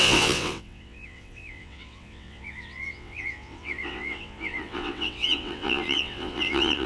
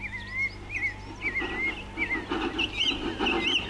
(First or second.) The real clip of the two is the second